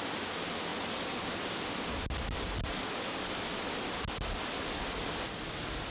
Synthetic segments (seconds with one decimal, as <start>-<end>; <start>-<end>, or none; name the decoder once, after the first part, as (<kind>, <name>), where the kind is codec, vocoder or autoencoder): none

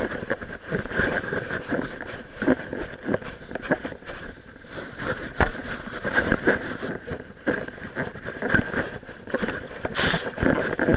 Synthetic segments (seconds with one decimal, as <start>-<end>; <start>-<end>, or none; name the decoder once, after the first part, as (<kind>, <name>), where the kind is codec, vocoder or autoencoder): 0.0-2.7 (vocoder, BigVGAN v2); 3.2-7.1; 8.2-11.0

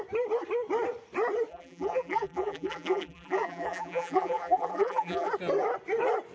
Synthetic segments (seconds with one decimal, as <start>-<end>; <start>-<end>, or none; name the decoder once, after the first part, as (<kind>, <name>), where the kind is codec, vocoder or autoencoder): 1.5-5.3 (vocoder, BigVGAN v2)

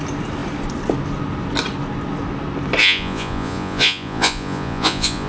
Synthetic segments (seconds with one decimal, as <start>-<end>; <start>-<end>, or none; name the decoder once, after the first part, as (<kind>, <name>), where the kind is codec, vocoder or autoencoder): 2.8-5.3 (vocoder, Vocos)